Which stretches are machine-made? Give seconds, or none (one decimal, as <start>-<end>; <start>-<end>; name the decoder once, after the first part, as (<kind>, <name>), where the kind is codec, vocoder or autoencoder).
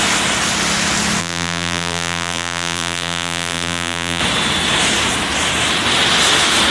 1.2-4.2 (vocoder, BigVGAN v2)